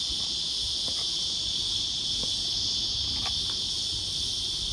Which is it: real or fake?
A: real